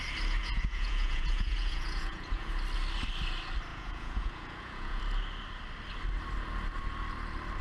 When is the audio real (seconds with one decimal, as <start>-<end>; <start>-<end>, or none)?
0.0-0.4; 2.5-3.7; 5.0-7.6